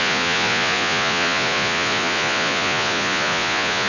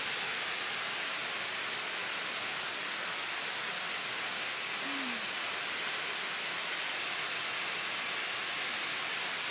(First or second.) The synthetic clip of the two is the first